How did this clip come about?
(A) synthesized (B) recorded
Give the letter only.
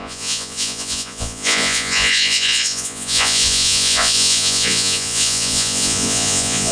A